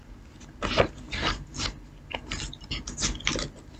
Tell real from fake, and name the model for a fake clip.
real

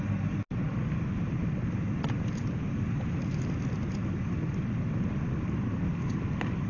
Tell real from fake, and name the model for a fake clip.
real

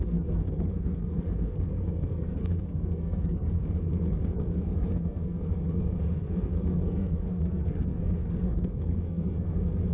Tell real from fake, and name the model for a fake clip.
fake, codec, SNAC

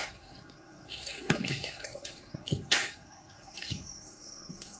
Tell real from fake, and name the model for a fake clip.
fake, codec, SNAC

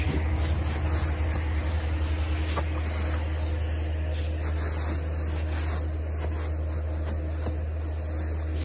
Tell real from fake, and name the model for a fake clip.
real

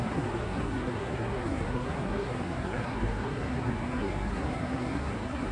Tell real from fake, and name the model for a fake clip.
fake, codec, SNAC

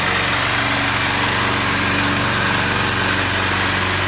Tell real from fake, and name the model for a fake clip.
real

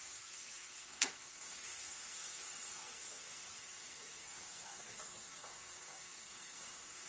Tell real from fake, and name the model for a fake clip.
fake, codec, SNAC